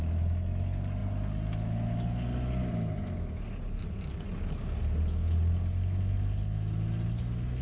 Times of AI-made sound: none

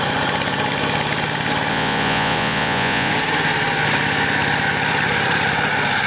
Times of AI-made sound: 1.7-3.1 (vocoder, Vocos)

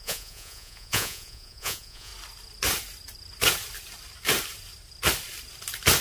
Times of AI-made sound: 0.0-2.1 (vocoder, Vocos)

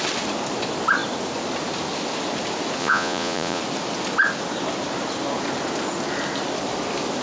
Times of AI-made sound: 2.8-3.6 (vocoder, Vocos)